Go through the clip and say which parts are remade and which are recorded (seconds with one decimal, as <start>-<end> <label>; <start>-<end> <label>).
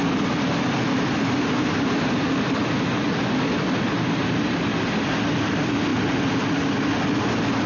0.0-7.7 recorded